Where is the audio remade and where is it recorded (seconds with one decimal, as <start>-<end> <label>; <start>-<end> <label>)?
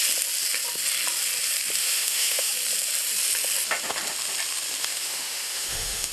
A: 0.0-1.8 recorded; 1.8-2.5 remade; 2.5-4.8 recorded; 4.8-6.1 remade